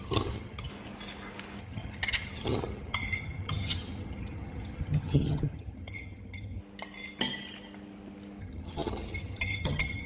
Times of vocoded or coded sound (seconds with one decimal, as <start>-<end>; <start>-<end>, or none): 0.0-0.7; 1.6-6.6; 8.4-10.1